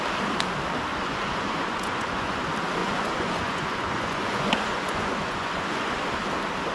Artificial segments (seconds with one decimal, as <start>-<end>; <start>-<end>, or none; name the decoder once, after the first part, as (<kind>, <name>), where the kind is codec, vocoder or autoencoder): 0.9-2.4 (vocoder, Vocos); 2.8-6.0